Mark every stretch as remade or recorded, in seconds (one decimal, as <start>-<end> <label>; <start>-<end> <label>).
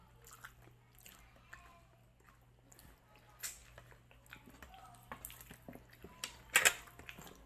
0.0-7.5 recorded